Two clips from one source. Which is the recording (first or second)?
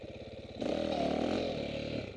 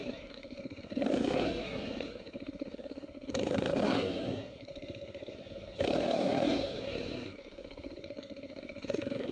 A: first